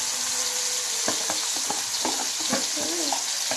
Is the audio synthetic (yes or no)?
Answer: no